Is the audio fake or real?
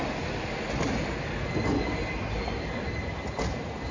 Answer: real